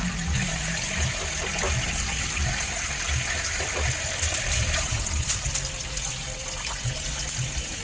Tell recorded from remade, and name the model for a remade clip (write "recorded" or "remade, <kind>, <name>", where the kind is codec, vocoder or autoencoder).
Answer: recorded